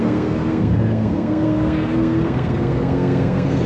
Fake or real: fake